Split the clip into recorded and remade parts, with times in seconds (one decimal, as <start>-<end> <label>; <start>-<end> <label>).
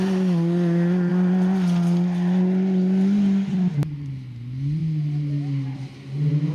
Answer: 0.0-6.5 recorded